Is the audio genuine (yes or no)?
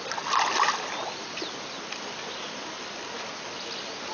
yes